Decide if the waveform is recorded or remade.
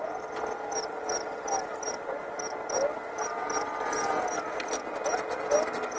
recorded